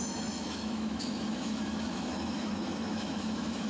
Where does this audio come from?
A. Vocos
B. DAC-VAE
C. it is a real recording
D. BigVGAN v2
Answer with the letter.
B